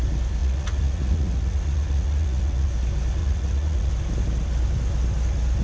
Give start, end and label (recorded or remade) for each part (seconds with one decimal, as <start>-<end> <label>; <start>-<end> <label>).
0.0-0.4 recorded; 0.4-2.7 remade; 2.7-3.2 recorded; 3.2-3.9 remade; 3.9-5.6 recorded